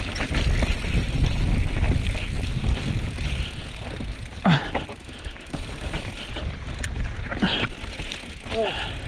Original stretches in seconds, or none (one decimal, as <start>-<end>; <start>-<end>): 0.0-5.0; 6.1-9.1